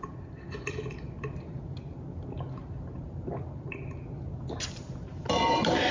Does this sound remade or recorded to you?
recorded